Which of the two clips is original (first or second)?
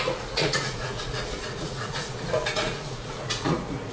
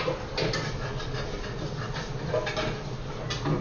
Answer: second